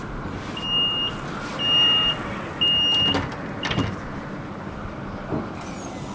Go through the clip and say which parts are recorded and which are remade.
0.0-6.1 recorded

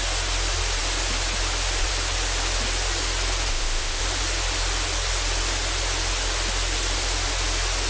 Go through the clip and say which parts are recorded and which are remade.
0.0-3.5 recorded; 3.5-4.0 remade; 4.0-7.9 recorded

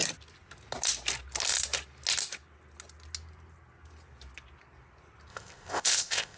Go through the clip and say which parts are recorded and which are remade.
0.0-5.3 recorded; 5.3-6.4 remade

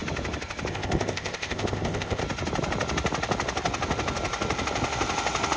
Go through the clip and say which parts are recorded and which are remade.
0.0-0.7 recorded; 0.7-2.2 remade; 2.2-5.6 recorded

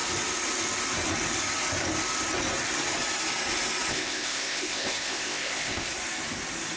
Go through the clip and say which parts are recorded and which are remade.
0.0-3.9 recorded; 3.9-5.9 remade; 5.9-6.8 recorded

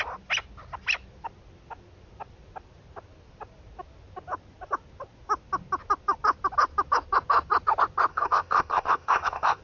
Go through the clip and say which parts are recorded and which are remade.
0.0-8.1 recorded; 8.1-9.6 remade

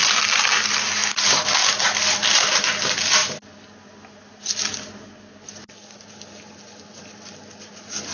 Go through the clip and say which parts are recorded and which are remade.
0.0-8.1 recorded